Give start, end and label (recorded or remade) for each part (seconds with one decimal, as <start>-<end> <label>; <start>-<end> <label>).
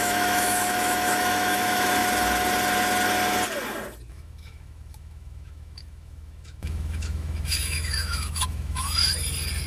0.0-2.0 remade; 2.0-4.1 recorded; 4.1-9.0 remade; 9.0-9.7 recorded